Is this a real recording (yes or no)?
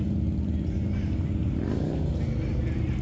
yes